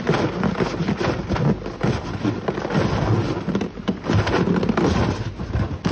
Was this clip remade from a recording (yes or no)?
no